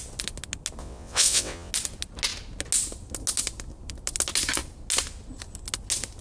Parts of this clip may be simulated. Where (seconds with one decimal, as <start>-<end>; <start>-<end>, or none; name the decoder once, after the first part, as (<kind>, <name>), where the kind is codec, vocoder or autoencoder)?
0.8-1.7 (vocoder, WaveNeXt)